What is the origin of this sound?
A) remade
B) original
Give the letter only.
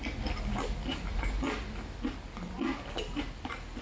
B